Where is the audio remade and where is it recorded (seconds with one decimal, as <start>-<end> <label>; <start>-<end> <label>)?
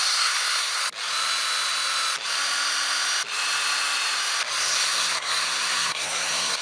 0.0-0.8 remade; 0.8-4.6 recorded; 4.6-6.6 remade